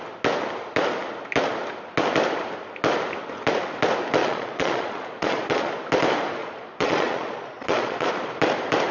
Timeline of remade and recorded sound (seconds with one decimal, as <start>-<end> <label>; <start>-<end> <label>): 0.0-4.2 recorded; 4.2-5.7 remade; 5.7-6.4 recorded; 6.4-8.1 remade; 8.1-8.9 recorded